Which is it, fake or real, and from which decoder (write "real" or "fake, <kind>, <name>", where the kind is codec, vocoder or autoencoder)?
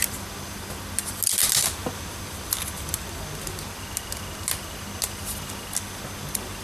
real